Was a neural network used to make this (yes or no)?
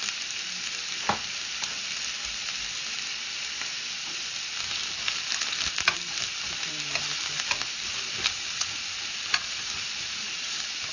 no